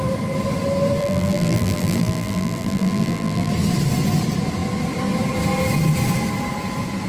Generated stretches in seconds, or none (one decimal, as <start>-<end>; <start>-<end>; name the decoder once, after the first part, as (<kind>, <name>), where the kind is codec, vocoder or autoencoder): 1.0-3.5 (vocoder, BigVGAN v2)

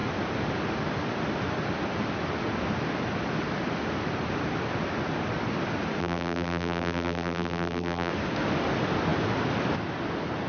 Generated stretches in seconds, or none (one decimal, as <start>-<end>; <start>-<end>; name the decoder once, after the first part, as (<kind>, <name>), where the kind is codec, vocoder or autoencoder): 6.0-8.1 (vocoder, BigVGAN v2)

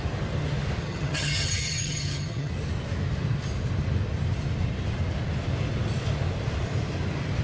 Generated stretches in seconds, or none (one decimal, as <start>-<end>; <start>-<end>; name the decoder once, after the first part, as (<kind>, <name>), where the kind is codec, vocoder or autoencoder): 0.8-2.5 (vocoder, HiFi-GAN)

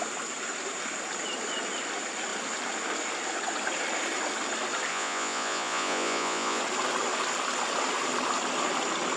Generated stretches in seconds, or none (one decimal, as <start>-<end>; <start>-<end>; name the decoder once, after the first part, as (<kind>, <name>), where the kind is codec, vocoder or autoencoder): 4.9-6.6 (vocoder, Vocos)

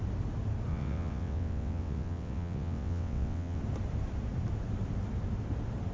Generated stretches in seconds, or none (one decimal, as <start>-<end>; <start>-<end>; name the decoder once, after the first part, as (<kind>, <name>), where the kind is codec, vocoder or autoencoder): 0.7-3.6 (vocoder, WaveNeXt)

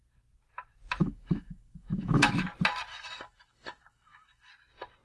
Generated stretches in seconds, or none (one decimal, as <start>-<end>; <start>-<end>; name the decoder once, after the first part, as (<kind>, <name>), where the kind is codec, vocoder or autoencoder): 1.0-2.3 (autoencoder, DAC-VAE); 2.9-4.5

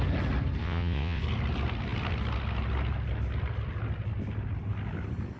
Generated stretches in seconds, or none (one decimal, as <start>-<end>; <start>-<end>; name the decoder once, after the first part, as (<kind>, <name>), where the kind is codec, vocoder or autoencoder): 0.6-1.2 (vocoder, WaveNeXt)